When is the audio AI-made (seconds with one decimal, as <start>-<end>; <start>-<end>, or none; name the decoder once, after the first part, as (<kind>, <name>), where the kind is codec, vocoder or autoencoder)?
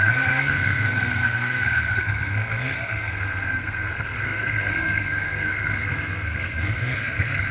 0.0-7.5 (codec, SNAC)